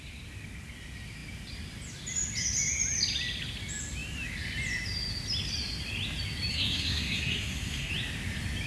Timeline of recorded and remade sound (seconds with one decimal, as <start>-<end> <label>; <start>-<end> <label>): 0.0-6.5 recorded; 6.5-7.9 remade; 7.9-8.7 recorded